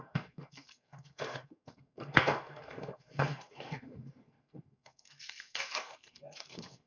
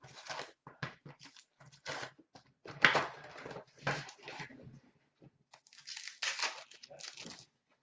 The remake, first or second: first